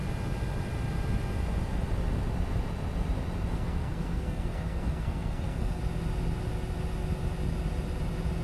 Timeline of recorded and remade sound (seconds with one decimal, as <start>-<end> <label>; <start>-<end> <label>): 0.0-3.5 recorded; 3.5-5.8 remade; 5.8-8.4 recorded